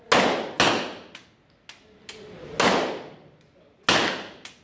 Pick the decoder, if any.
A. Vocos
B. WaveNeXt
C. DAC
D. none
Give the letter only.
D